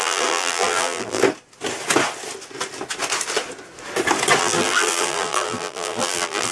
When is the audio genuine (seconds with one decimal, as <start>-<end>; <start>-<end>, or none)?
1.2-4.4